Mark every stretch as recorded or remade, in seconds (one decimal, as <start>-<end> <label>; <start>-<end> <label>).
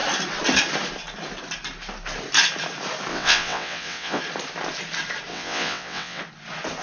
0.0-3.1 recorded; 3.1-4.2 remade; 4.2-5.3 recorded; 5.3-6.2 remade; 6.2-6.8 recorded